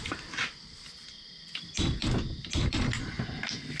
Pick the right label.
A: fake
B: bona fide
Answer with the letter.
B